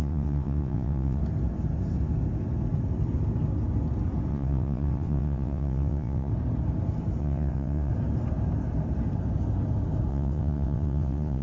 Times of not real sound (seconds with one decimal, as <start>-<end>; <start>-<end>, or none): 0.0-1.2; 4.3-6.3; 7.2-7.9; 10.1-11.4